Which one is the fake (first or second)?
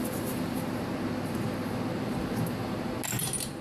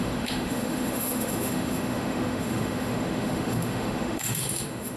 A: second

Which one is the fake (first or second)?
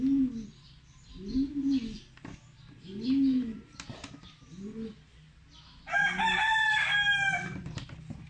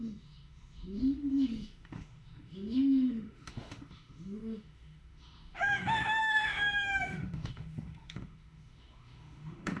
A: second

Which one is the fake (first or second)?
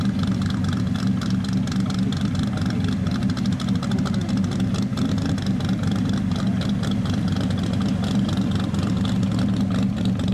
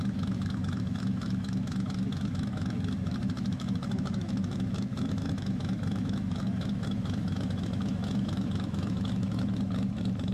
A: second